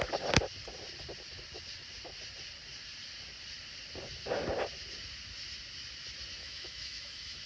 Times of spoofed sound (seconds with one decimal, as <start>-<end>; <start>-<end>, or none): 6.4-7.5